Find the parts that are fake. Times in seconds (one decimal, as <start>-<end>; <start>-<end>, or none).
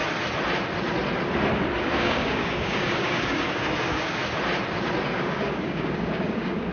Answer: 1.8-4.2; 5.0-6.7